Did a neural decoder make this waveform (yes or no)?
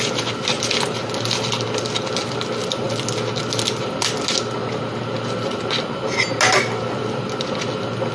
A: no